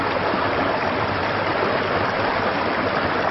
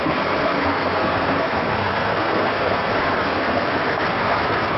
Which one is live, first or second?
first